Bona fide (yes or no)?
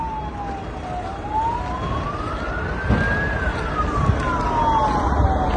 yes